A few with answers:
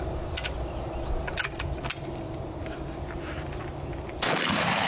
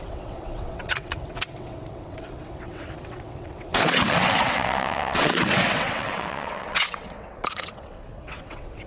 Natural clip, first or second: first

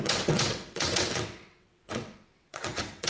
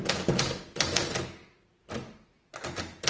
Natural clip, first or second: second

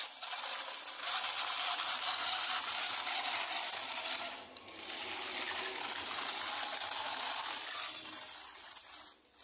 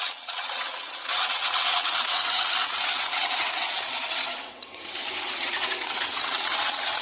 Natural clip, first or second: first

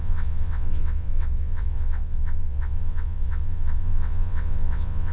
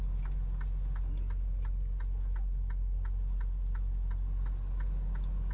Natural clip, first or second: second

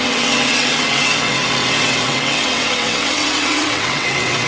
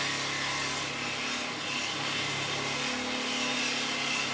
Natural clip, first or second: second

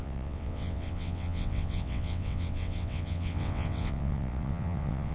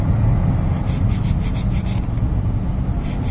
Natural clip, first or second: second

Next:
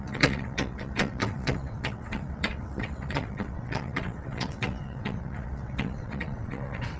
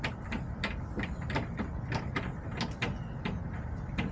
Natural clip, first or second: second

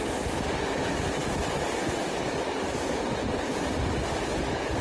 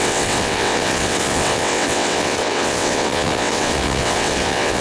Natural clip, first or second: first